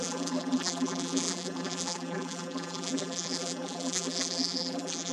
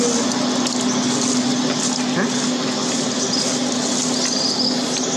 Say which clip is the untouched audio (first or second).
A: second